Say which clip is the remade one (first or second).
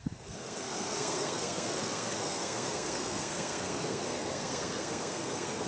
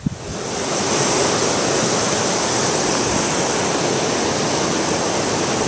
first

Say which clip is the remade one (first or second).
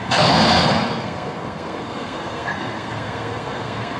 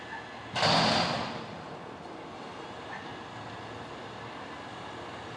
first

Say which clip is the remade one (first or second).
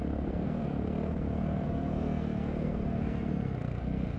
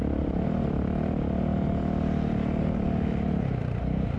first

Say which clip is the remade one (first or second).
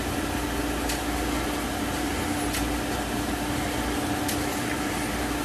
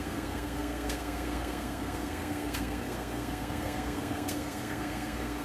second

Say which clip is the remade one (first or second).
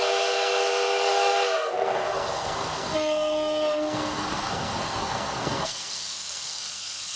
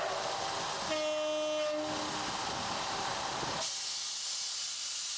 first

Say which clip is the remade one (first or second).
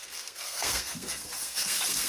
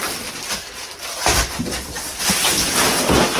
first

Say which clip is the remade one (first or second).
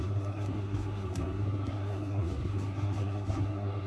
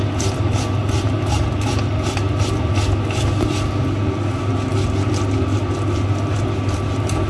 first